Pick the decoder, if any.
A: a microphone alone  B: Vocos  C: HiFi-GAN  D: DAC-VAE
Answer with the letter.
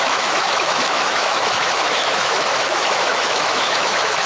D